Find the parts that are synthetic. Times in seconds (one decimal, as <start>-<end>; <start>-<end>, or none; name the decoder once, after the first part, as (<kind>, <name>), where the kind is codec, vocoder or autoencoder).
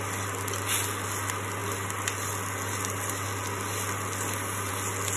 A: none